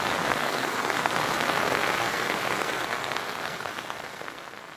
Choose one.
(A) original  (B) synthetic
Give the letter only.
B